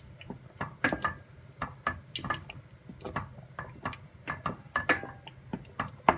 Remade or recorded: recorded